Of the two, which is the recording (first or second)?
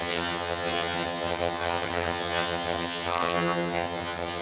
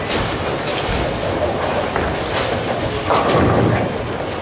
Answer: second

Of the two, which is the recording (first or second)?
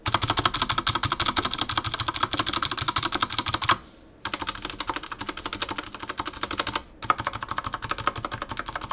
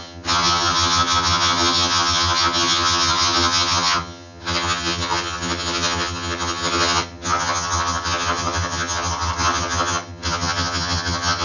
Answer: first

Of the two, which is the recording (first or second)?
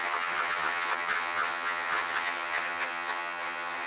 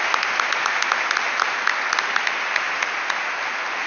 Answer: second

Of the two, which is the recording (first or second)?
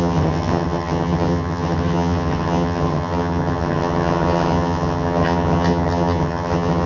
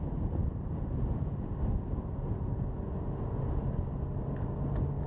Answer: second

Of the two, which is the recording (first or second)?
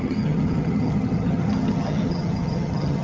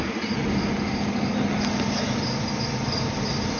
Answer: second